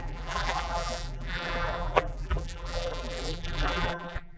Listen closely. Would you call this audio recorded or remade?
remade